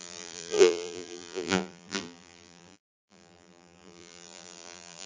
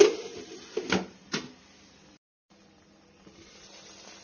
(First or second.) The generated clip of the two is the first